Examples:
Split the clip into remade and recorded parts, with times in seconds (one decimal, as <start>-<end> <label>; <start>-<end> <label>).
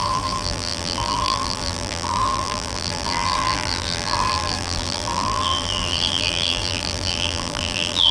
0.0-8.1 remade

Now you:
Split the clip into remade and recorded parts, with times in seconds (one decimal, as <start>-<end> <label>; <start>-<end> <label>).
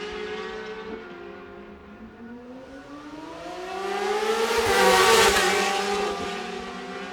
0.0-1.8 recorded; 1.8-3.5 remade; 3.5-7.1 recorded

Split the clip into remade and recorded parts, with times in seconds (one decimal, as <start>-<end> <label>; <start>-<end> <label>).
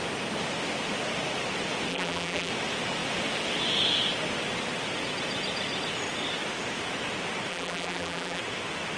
0.0-1.9 recorded; 1.9-2.5 remade; 2.5-7.5 recorded; 7.5-8.4 remade; 8.4-9.0 recorded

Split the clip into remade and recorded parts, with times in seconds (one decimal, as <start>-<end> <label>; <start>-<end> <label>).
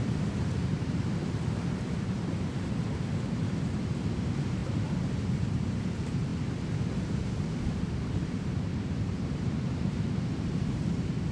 0.0-4.6 remade; 4.6-5.2 recorded; 5.2-6.3 remade; 6.3-7.3 recorded; 7.3-11.3 remade